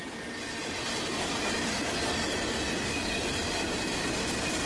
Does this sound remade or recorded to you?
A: recorded